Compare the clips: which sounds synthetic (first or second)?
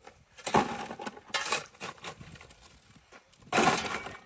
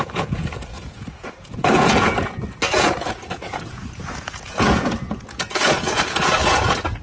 second